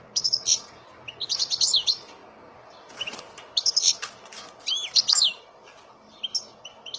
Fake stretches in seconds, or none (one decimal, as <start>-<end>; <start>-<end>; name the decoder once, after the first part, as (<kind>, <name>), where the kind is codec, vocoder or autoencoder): none